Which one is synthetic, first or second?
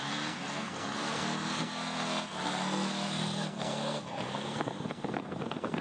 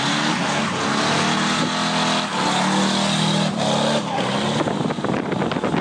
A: first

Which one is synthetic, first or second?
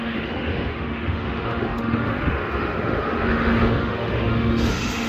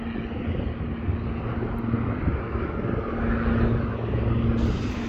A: first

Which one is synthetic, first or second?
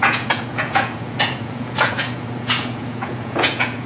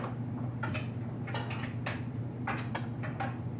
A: first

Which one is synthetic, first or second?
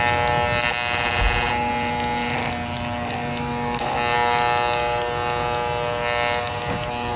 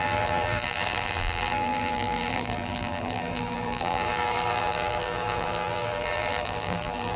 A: second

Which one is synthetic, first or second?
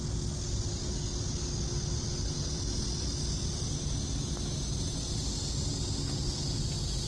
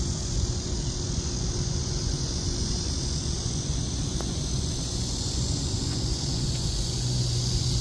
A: second